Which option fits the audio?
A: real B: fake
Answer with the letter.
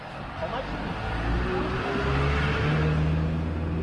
A